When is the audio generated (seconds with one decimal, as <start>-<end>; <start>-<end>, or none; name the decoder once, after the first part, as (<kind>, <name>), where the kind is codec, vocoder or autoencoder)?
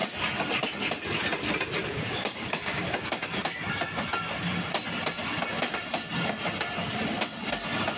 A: 1.9-3.2 (codec, DAC)